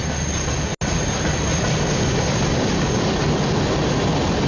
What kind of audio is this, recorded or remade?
recorded